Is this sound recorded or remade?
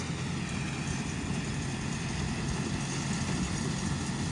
recorded